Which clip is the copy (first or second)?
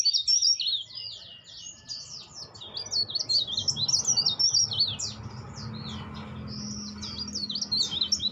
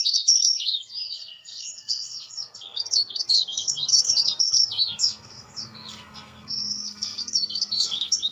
second